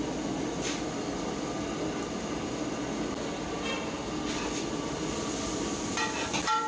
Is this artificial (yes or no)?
no